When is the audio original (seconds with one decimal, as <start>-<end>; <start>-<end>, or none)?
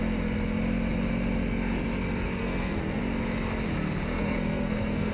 0.0-2.4; 3.0-4.1